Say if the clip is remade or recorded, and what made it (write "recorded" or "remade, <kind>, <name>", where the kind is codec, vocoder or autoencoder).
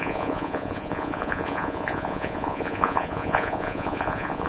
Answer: remade, vocoder, Vocos